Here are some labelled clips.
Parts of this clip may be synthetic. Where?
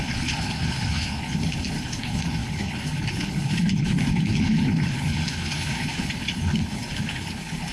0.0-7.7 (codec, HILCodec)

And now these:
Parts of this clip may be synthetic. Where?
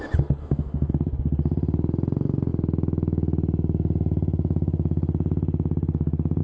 0.4-0.9 (autoencoder, DAC-VAE)